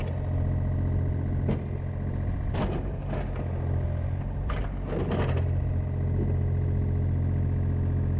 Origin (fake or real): real